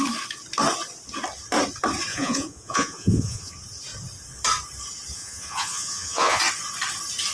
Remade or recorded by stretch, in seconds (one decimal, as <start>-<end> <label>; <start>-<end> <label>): 0.0-2.1 recorded; 2.1-3.5 remade; 3.5-5.1 recorded; 5.1-6.4 remade; 6.4-7.3 recorded

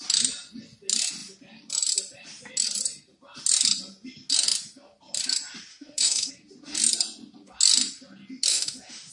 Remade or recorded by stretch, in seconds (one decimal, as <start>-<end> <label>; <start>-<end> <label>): 0.0-5.7 recorded; 5.7-6.3 remade; 6.3-8.5 recorded; 8.5-9.1 remade

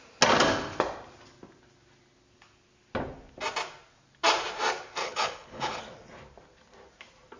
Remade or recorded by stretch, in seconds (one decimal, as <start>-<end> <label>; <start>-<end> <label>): 0.0-5.0 recorded; 5.0-5.8 remade; 5.8-7.4 recorded

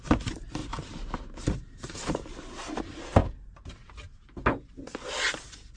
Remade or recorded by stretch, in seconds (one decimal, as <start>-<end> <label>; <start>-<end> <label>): 0.0-5.8 recorded

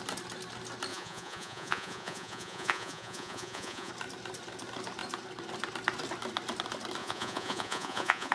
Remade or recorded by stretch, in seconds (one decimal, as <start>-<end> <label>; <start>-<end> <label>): 0.0-0.9 recorded; 0.9-3.9 remade; 3.9-7.0 recorded; 7.0-8.3 remade

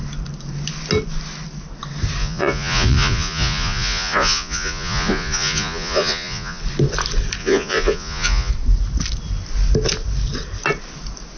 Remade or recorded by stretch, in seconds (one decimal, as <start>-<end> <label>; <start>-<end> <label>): 0.0-2.2 recorded; 2.2-6.6 remade; 6.6-7.4 recorded; 7.4-8.5 remade; 8.5-11.4 recorded

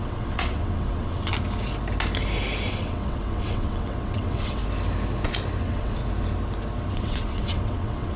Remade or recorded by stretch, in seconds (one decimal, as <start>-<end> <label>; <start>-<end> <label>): 0.0-1.3 remade; 1.3-2.7 recorded; 2.7-4.6 remade; 4.6-5.6 recorded; 5.6-6.0 remade; 6.0-6.9 recorded; 6.9-8.2 remade